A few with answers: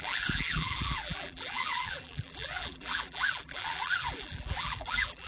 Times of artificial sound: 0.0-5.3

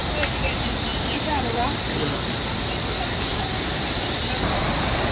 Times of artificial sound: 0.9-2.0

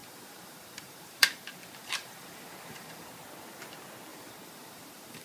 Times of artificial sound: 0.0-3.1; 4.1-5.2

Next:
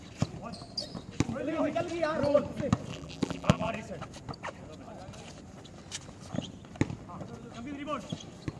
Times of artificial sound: 2.9-3.7